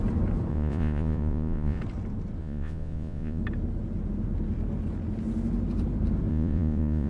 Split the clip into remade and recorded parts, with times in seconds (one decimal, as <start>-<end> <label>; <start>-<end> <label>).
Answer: 0.0-0.5 recorded; 0.5-1.8 remade; 1.8-2.4 recorded; 2.4-3.4 remade; 3.4-6.3 recorded; 6.3-7.1 remade